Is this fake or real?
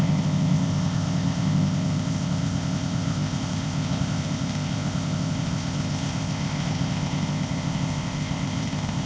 fake